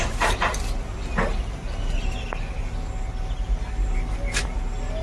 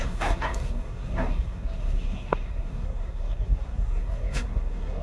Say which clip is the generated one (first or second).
second